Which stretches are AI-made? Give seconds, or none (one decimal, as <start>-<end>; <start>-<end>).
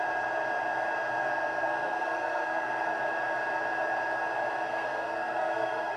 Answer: 1.2-2.9; 4.7-6.0